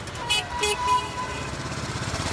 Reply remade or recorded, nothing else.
remade